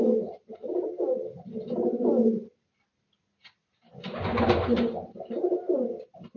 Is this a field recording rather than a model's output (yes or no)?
yes